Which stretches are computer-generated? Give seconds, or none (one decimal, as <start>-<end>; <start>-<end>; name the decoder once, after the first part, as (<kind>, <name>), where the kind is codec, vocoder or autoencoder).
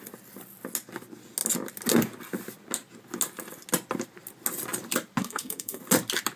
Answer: 5.2-5.8 (codec, SNAC)